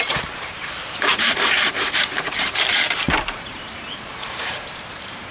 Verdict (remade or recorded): remade